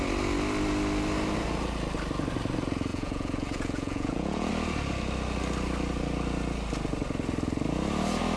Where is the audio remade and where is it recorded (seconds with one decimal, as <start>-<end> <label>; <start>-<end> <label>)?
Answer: 0.0-2.9 recorded; 2.9-4.5 remade; 4.5-8.4 recorded